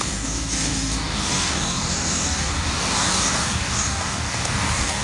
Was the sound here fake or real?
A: fake